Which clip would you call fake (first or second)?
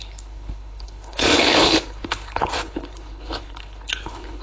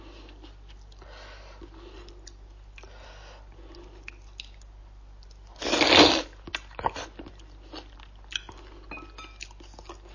first